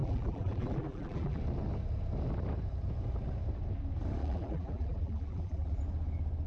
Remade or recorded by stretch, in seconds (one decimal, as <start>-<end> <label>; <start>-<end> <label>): 0.0-1.4 remade; 1.4-4.2 recorded; 4.2-5.8 remade; 5.8-6.5 recorded